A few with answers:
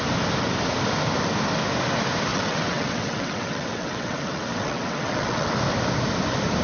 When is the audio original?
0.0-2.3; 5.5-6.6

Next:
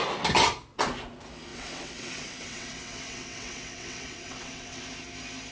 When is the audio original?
0.0-1.5; 4.8-5.5

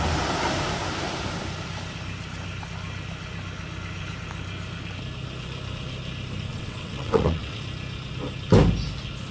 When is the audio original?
0.0-6.5; 7.6-9.3

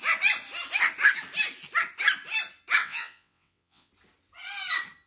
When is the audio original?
0.0-2.8; 3.9-5.1

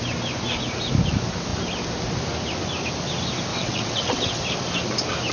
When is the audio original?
0.0-3.5; 4.4-5.3

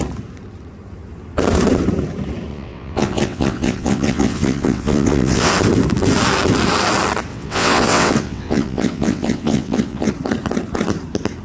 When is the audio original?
0.0-2.5; 5.5-7.3; 10.1-11.4

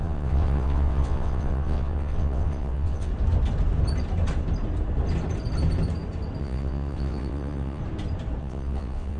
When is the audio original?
3.1-6.4; 7.8-8.4

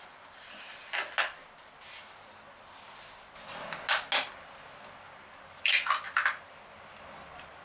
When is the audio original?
0.0-7.6